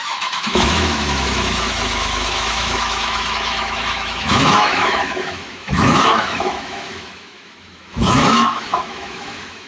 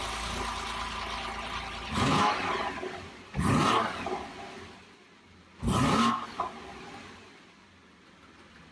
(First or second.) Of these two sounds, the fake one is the first